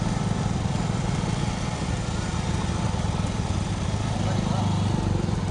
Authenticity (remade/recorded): recorded